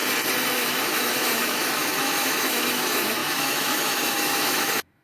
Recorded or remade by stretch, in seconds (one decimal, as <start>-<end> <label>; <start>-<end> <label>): 0.0-0.5 recorded; 0.5-5.0 remade